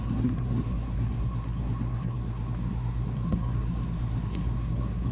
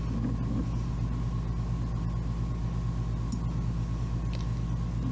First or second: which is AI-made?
first